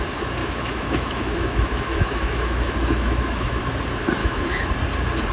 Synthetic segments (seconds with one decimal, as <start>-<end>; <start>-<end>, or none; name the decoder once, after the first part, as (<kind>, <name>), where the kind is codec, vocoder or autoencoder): 0.4-3.6 (autoencoder, DAC-VAE); 4.2-4.7